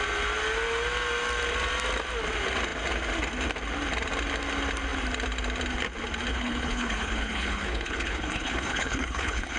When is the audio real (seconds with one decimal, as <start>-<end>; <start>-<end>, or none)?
0.0-6.3